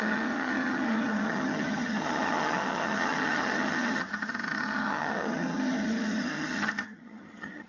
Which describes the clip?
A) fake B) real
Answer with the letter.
A